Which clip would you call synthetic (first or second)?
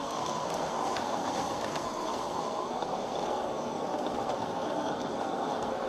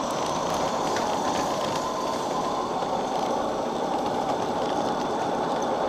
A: first